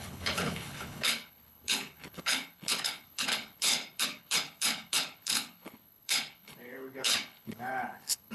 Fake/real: fake